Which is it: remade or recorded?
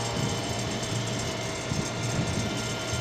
recorded